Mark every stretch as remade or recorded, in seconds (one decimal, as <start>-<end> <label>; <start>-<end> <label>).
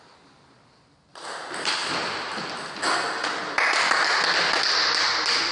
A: 0.0-5.5 recorded